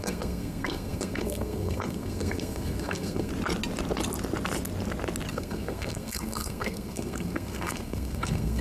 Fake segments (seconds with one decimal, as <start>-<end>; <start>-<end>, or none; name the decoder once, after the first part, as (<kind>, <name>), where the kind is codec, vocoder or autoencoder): 0.0-3.3 (codec, SNAC); 5.3-8.6